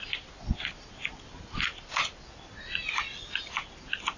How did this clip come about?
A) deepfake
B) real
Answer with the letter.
B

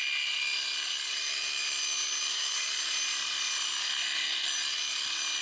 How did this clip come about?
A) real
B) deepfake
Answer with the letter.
A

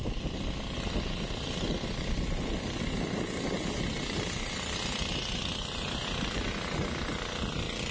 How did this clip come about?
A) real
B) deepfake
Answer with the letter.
A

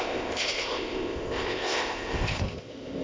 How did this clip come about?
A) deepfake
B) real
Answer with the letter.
A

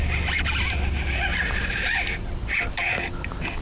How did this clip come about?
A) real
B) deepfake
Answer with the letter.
A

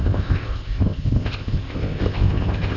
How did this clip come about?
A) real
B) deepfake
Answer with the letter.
B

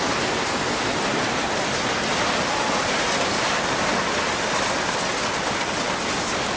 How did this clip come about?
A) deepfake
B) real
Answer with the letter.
B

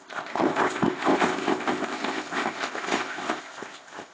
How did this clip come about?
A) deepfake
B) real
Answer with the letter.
A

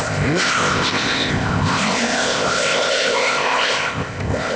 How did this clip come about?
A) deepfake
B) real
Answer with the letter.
A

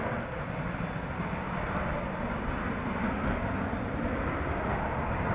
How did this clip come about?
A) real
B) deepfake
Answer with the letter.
A